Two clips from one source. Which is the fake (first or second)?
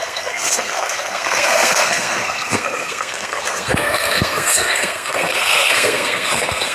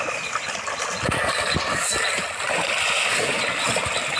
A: first